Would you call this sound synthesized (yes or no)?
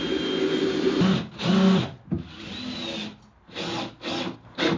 no